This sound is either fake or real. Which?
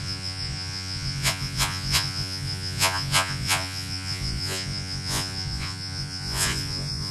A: fake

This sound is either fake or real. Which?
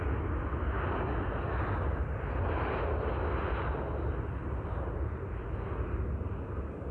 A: real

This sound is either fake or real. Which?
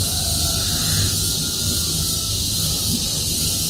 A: real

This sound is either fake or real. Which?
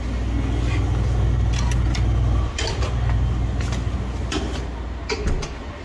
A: real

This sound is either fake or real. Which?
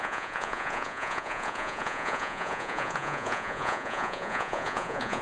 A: fake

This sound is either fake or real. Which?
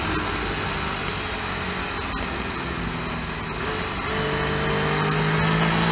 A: real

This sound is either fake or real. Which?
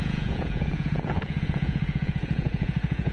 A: fake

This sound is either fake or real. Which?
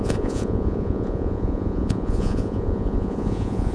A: fake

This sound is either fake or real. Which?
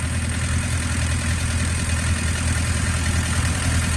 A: real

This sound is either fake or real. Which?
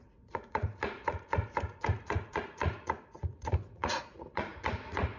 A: fake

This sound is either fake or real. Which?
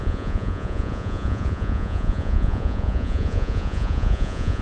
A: fake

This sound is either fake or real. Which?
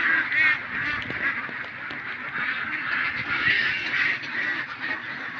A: real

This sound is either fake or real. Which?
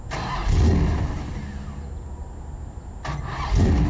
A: real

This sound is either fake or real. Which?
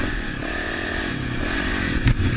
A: fake